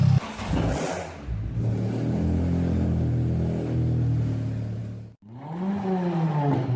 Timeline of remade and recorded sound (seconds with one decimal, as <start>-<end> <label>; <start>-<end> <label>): 0.0-6.8 recorded